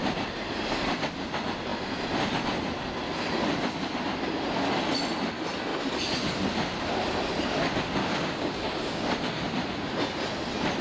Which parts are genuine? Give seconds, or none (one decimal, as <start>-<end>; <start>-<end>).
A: 0.0-8.0; 9.1-10.8